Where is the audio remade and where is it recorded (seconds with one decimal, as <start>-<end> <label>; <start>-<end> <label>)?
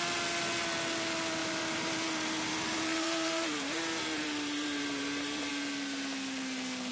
0.0-1.4 recorded; 1.4-5.5 remade; 5.5-6.9 recorded